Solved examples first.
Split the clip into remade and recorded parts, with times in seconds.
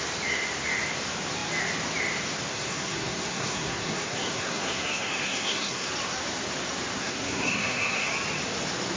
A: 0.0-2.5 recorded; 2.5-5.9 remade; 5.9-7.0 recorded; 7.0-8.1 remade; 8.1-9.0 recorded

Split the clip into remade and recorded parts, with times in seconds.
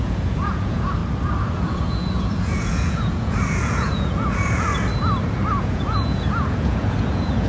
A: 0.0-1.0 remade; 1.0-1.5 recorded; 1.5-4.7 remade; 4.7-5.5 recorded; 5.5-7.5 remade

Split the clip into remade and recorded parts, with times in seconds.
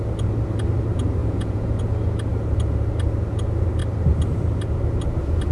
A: 0.0-1.2 recorded; 1.2-1.8 remade; 1.8-5.5 recorded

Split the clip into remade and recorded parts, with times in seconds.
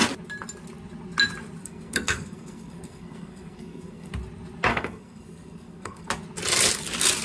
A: 0.0-1.6 recorded; 1.6-4.1 remade; 4.1-4.7 recorded; 4.7-6.1 remade; 6.1-7.2 recorded